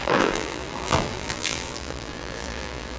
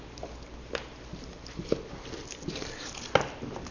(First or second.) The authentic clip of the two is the second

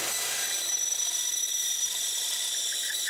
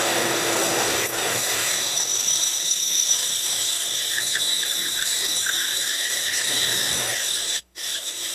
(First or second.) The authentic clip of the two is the first